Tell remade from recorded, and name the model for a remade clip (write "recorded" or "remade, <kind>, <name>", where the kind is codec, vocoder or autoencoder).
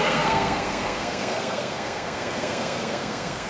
remade, codec, SNAC